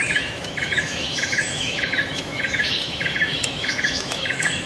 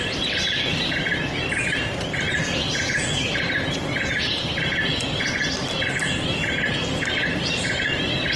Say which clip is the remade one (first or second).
first